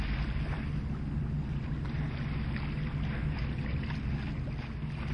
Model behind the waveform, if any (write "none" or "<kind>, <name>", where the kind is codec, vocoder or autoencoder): none